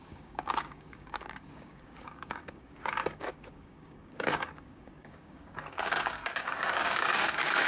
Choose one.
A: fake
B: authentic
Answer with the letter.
A